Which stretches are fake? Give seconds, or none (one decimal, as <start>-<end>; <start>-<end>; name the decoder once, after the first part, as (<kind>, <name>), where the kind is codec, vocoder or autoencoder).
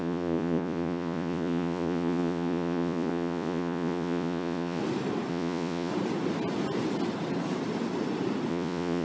0.0-4.8 (vocoder, Vocos); 5.3-5.9; 8.5-9.0